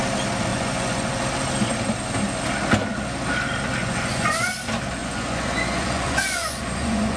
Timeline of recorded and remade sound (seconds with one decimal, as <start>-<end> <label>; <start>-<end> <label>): 0.0-0.5 recorded; 0.5-1.2 remade; 1.2-3.8 recorded; 3.8-4.5 remade; 4.5-5.0 recorded; 5.0-7.2 remade